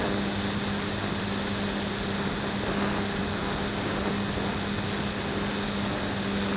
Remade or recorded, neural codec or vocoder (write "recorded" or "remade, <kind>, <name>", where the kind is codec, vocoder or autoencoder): recorded